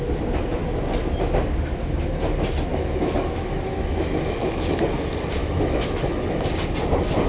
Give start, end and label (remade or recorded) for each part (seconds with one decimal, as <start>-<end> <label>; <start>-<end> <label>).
0.0-2.7 recorded; 2.7-4.8 remade; 4.8-5.4 recorded; 5.4-6.5 remade; 6.5-7.3 recorded